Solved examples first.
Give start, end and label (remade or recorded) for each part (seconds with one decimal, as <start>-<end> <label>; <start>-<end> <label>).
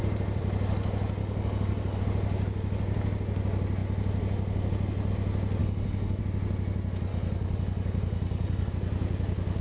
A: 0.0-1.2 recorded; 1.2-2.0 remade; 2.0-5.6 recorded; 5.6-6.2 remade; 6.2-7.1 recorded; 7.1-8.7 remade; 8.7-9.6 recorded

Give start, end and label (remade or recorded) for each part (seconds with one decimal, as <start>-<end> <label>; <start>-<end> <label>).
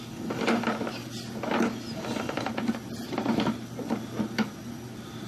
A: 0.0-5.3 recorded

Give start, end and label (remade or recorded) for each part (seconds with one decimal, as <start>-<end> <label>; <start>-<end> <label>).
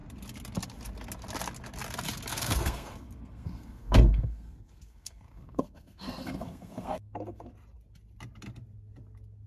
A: 0.0-2.3 recorded; 2.3-7.5 remade; 7.5-9.5 recorded